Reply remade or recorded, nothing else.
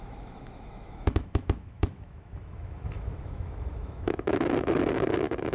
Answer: remade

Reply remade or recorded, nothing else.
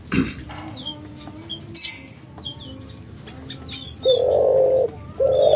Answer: recorded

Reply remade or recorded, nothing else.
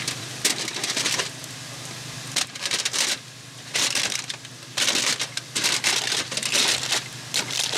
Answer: recorded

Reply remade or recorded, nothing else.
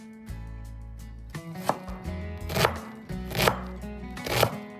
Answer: recorded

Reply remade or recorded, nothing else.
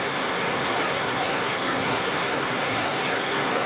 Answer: remade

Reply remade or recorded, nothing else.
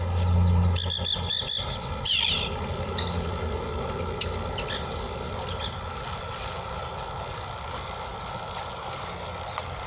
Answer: recorded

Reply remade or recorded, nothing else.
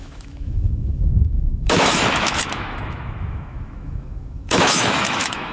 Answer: remade